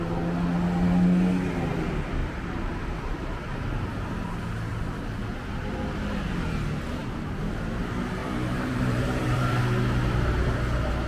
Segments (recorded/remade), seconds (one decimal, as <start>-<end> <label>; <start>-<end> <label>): 0.0-2.2 recorded; 2.2-4.1 remade; 4.1-8.2 recorded; 8.2-9.6 remade; 9.6-11.1 recorded